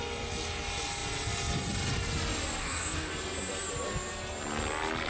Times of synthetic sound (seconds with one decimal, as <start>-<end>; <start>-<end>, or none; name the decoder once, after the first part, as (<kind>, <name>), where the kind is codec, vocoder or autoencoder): 2.6-3.1 (codec, DAC)